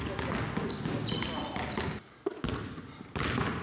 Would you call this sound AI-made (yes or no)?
no